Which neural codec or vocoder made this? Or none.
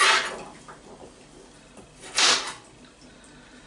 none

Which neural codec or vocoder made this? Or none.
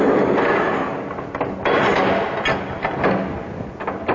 none